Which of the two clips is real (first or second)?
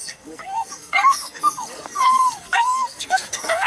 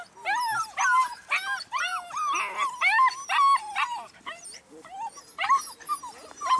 second